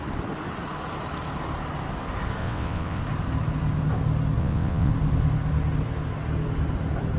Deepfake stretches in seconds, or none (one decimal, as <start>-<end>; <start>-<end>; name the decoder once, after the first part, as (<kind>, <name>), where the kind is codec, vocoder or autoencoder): 2.4-3.0 (vocoder, WaveNeXt); 4.4-4.9